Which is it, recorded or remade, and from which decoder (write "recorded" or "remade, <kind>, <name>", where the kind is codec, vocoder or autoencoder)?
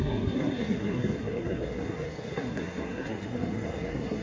remade, codec, SNAC